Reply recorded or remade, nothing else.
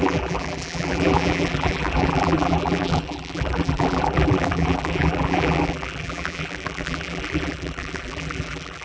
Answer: remade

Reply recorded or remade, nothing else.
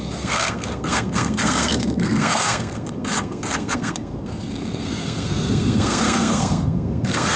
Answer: remade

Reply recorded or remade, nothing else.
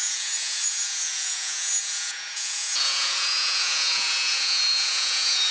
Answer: remade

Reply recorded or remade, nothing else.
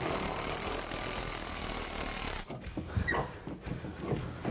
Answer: recorded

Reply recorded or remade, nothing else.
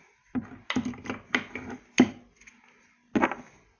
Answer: recorded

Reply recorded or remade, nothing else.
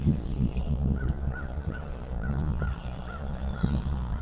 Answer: remade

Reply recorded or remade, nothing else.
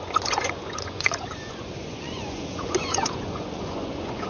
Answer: remade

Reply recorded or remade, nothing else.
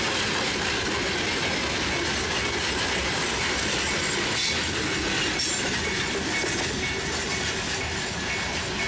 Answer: recorded